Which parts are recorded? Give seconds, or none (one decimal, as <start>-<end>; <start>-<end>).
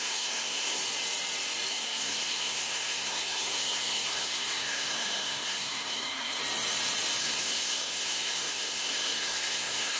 0.8-1.7; 6.4-7.2